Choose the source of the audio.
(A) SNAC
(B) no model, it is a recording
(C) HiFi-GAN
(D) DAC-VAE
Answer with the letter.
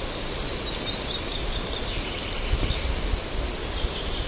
B